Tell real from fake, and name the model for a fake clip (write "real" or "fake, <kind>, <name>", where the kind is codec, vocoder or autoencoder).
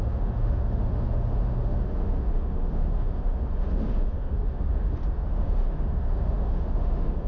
fake, autoencoder, DAC-VAE